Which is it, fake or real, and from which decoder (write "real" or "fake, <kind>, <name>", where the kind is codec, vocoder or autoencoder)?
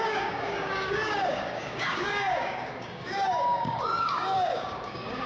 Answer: fake, codec, DAC